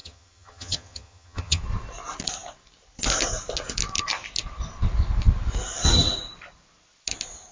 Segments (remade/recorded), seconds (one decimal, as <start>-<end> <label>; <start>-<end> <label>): 0.0-1.6 remade; 1.6-7.5 recorded